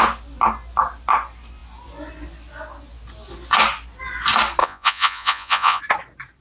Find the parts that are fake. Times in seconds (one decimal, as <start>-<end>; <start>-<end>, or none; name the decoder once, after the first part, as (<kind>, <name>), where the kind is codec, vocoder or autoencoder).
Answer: 4.6-5.8 (vocoder, Vocos)